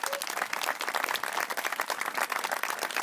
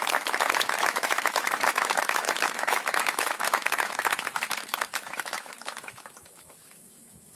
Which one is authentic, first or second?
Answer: first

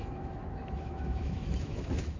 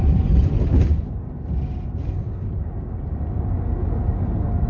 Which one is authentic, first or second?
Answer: second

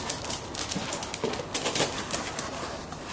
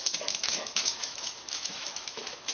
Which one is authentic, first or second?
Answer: first